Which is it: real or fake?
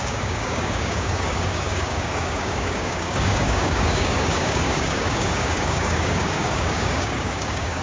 fake